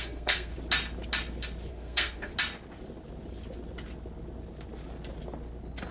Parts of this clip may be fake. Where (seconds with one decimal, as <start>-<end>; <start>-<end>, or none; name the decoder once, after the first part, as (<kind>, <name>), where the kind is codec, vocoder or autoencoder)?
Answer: 0.0-0.5 (codec, SNAC); 1.7-2.3